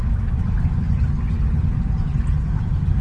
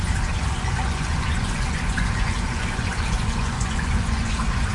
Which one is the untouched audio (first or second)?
first